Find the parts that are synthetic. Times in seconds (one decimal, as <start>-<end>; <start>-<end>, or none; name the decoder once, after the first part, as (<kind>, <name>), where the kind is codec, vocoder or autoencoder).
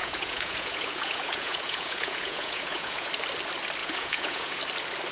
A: 0.0-3.1 (vocoder, Vocos); 3.8-4.6